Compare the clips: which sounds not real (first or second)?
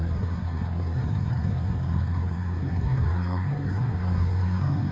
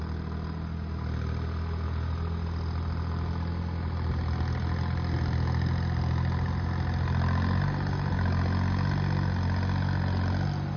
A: first